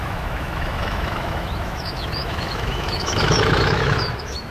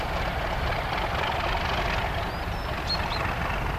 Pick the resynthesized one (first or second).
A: first